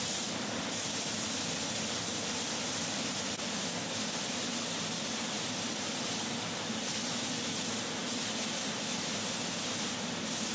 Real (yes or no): yes